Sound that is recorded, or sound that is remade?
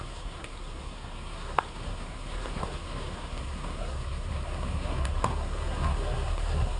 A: remade